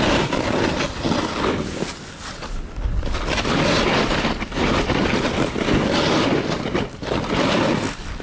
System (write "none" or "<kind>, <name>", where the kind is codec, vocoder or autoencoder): none